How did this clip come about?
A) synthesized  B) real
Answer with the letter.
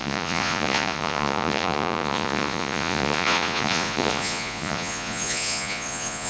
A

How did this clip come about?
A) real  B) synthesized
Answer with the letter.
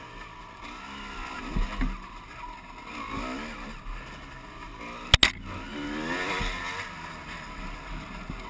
A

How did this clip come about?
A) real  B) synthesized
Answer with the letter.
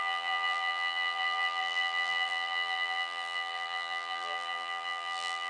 B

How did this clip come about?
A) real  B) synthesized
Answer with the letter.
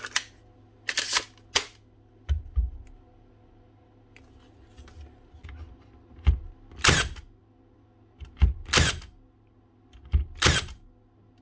A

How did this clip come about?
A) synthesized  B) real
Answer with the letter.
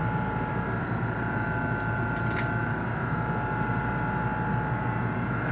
B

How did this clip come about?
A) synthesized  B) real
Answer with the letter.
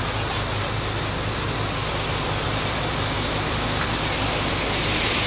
B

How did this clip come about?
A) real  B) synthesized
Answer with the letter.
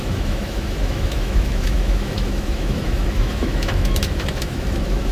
B